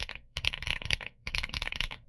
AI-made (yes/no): yes